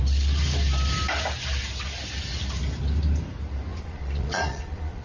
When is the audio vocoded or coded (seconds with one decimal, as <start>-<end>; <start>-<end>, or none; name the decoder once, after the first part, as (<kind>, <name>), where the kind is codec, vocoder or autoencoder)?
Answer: 3.7-5.0 (vocoder, Vocos)